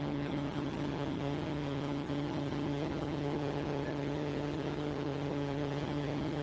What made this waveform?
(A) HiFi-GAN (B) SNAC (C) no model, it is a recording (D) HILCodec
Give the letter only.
A